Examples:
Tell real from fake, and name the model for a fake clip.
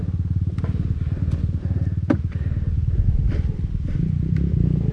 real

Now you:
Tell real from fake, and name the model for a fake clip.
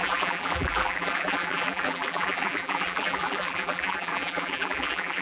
fake, vocoder, BigVGAN v2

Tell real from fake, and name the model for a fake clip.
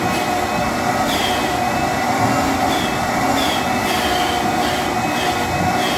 real